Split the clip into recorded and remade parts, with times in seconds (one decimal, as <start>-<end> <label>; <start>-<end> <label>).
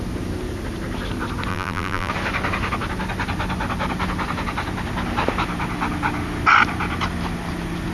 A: 0.0-1.5 recorded; 1.5-2.1 remade; 2.1-7.9 recorded